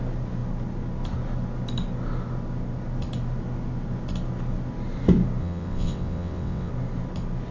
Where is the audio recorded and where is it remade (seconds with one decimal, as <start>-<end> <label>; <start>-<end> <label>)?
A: 0.0-5.4 recorded; 5.4-6.7 remade; 6.7-7.5 recorded